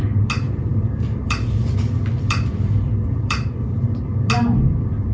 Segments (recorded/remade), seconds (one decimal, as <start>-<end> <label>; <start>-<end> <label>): 0.0-0.7 recorded; 0.7-3.8 remade; 3.8-5.1 recorded